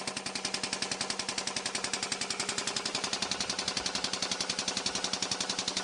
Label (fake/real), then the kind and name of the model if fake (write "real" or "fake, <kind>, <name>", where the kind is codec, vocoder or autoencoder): real